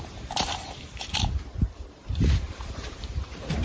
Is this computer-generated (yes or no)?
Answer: yes